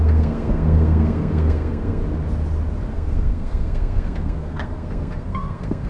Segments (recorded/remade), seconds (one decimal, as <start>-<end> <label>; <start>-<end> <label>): 0.0-2.0 remade; 2.0-2.9 recorded; 2.9-5.9 remade